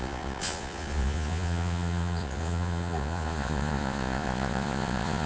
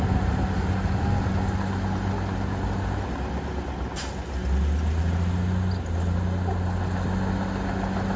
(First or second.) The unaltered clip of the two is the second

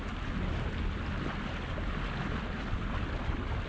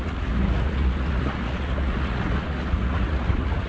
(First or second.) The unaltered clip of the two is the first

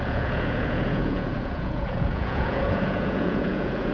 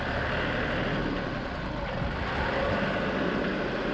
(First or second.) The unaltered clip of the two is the second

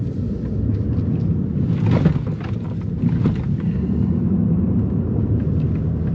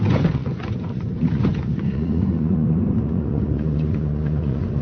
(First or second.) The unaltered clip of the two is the first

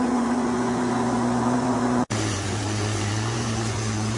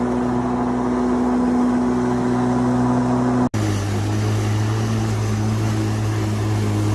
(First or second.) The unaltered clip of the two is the second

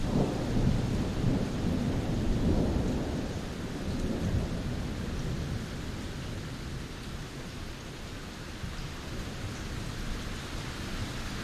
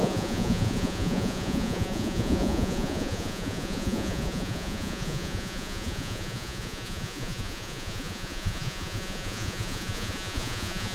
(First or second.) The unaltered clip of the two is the first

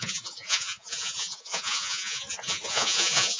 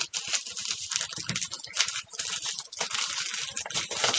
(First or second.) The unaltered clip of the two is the second